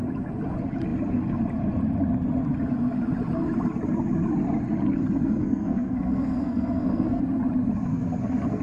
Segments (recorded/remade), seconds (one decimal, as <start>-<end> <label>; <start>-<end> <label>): 0.0-5.2 recorded; 5.2-7.2 remade; 7.2-7.9 recorded; 7.9-8.6 remade